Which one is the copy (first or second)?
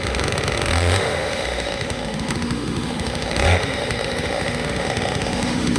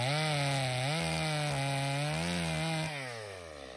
first